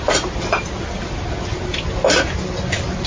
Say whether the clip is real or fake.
real